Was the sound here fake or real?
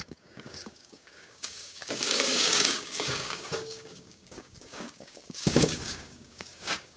fake